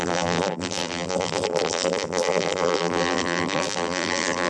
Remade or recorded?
remade